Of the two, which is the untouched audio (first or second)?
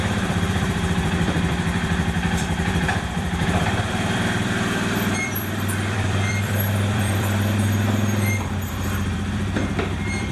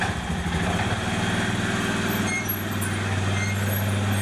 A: second